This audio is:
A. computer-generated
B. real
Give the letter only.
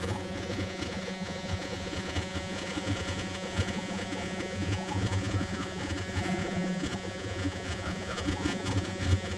A